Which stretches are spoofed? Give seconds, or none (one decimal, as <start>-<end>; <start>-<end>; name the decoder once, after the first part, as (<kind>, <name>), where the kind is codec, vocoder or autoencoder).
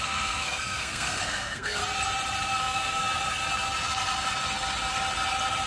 0.0-1.8 (codec, SNAC); 2.6-3.0